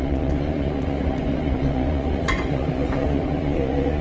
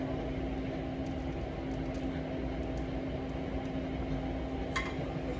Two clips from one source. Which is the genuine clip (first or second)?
second